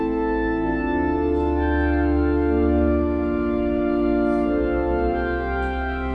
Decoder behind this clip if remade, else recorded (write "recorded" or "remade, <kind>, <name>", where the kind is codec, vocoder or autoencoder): recorded